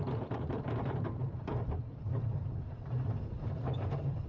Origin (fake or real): fake